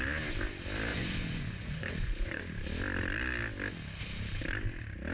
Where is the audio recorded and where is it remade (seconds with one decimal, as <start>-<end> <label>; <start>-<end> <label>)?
0.0-0.9 recorded; 0.9-2.4 remade; 2.4-5.1 recorded